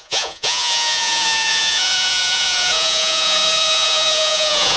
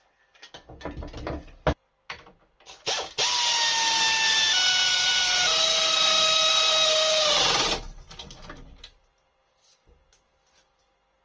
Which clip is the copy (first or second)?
first